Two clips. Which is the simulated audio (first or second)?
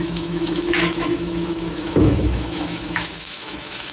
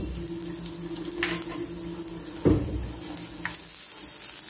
first